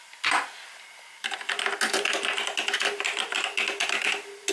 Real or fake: real